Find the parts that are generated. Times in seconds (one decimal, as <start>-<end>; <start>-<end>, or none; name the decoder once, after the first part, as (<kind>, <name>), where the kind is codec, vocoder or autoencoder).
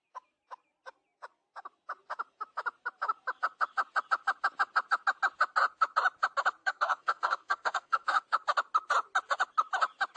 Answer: 6.6-8.2 (codec, SNAC)